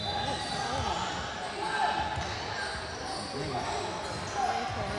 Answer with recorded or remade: recorded